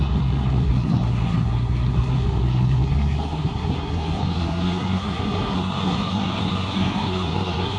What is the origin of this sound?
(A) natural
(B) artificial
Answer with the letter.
B